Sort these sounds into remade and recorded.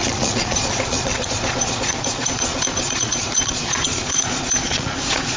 remade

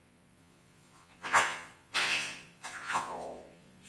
remade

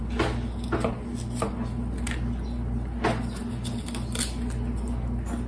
recorded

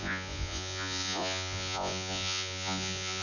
remade